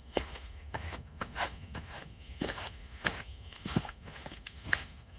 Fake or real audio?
fake